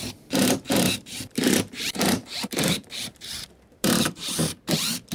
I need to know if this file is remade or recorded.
remade